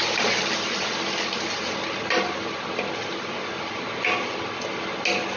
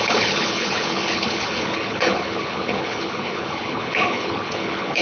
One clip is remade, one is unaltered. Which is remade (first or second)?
second